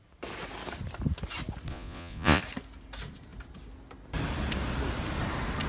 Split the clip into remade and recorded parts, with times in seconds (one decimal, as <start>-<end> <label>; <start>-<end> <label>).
0.0-1.7 recorded; 1.7-2.4 remade; 2.4-5.7 recorded